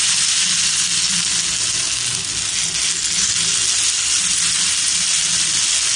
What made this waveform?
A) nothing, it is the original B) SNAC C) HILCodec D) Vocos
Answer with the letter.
A